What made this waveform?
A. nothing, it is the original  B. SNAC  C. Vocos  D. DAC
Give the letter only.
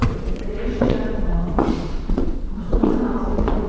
C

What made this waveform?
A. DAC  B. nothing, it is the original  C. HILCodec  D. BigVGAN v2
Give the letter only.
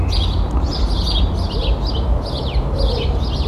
B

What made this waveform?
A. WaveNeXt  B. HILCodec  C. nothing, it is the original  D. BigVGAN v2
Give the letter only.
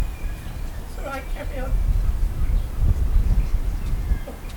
C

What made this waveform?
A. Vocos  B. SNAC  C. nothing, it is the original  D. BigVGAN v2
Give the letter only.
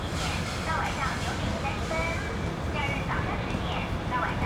C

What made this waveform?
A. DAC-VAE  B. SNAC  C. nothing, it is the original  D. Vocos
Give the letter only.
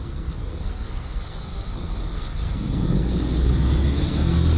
B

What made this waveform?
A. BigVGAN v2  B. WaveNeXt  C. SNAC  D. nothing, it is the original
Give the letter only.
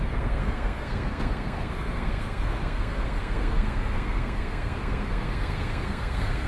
C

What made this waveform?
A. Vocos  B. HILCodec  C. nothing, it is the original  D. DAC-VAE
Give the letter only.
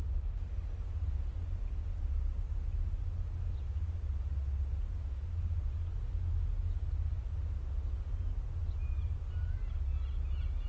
C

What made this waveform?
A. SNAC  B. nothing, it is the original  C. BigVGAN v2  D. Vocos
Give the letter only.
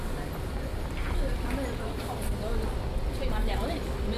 B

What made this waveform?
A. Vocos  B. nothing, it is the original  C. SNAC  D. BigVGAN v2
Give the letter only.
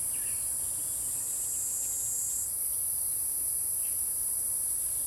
B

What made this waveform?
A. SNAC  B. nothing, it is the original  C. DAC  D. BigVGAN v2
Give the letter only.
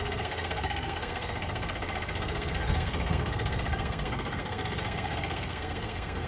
A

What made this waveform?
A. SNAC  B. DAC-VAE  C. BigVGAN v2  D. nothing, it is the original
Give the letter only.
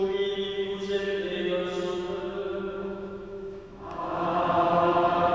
B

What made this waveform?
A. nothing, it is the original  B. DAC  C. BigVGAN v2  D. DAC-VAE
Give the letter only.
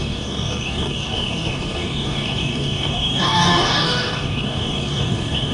B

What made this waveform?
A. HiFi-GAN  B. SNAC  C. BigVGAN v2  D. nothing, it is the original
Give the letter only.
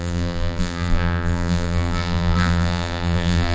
C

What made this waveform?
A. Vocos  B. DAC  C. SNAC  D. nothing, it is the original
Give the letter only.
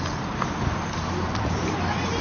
D